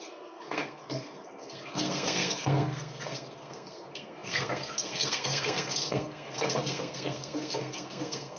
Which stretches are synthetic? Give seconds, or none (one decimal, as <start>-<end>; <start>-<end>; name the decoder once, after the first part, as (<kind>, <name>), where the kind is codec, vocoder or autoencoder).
0.0-8.4 (codec, SNAC)

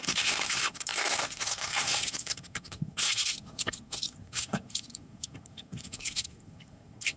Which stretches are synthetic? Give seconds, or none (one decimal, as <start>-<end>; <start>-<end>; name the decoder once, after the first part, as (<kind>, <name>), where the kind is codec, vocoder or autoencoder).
0.0-7.2 (codec, SNAC)

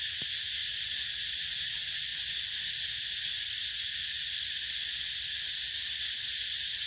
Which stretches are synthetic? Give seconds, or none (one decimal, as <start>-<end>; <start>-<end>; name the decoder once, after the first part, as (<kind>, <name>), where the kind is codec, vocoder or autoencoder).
none

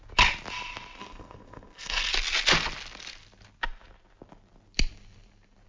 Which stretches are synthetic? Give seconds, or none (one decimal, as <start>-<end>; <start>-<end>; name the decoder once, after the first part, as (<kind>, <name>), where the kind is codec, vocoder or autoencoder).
1.0-2.1 (codec, SNAC)

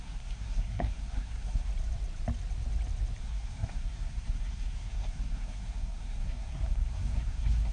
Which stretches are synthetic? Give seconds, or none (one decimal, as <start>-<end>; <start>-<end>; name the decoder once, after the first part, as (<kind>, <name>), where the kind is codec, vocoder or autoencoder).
0.0-1.7 (codec, SNAC); 3.2-7.7